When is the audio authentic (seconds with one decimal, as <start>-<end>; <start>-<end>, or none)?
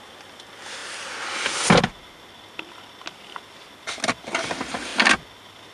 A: 0.0-5.7